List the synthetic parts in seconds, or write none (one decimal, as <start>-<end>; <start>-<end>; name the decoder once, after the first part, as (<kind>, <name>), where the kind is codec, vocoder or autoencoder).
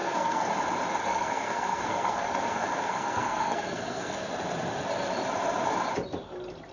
0.0-0.5 (codec, SNAC); 1.0-4.3